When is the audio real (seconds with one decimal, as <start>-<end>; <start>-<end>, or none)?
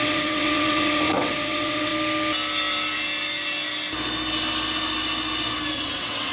1.9-5.7